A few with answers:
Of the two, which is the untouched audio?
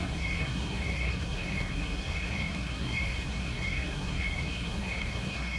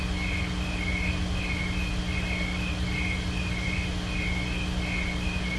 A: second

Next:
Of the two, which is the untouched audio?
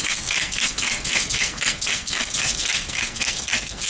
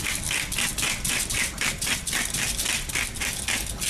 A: second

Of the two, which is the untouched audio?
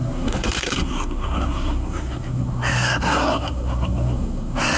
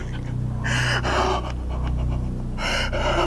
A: second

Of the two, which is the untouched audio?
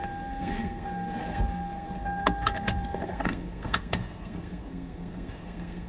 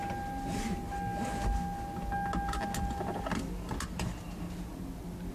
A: second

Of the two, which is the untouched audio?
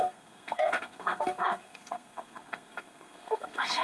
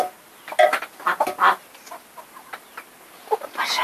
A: second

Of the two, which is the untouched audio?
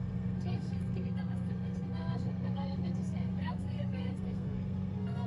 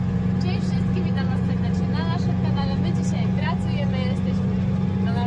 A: second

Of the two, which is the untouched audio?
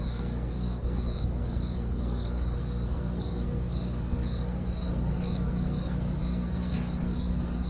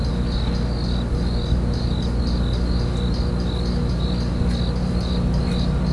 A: second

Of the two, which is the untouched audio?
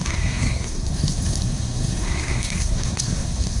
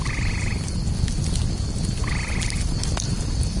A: second